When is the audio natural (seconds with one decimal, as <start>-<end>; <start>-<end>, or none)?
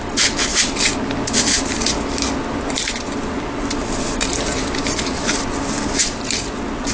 0.0-6.9